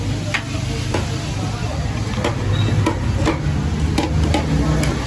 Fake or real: real